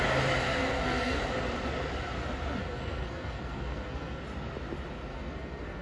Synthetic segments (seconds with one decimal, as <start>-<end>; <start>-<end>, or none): 0.5-1.2; 2.6-4.2; 5.1-5.8